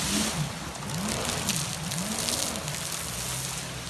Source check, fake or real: real